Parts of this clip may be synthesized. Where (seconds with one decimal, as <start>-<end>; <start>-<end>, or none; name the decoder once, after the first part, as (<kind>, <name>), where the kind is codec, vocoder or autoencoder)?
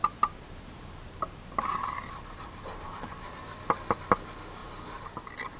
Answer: 0.0-3.4 (vocoder, BigVGAN v2); 4.6-5.1